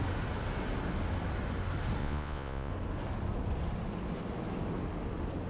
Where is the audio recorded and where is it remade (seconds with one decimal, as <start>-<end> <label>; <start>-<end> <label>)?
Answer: 0.0-2.0 recorded; 2.0-2.7 remade; 2.7-5.5 recorded